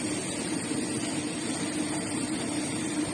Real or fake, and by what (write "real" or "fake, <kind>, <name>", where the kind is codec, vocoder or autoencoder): real